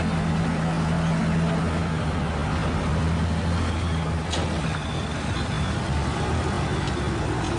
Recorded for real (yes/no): yes